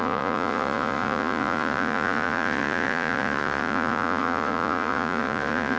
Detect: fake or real fake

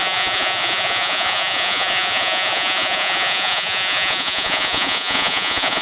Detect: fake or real fake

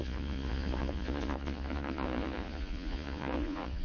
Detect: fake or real fake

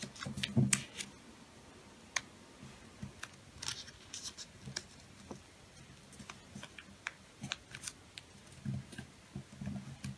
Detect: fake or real real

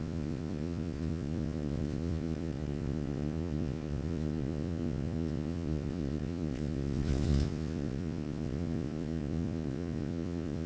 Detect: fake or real fake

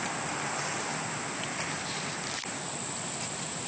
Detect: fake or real real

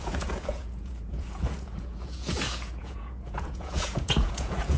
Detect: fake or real fake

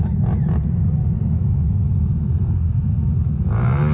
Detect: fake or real real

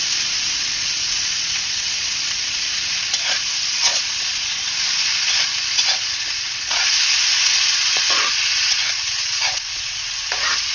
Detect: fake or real fake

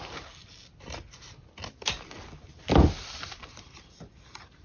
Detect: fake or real real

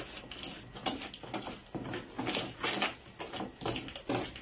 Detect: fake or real real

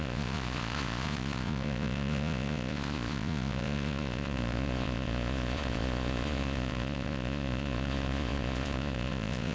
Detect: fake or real fake